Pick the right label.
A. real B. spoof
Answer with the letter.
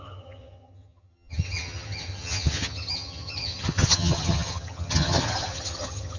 B